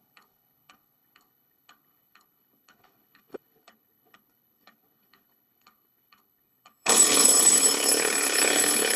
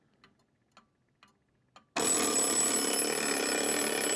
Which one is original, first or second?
second